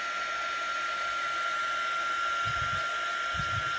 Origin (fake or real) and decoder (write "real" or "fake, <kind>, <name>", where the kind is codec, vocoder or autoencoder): real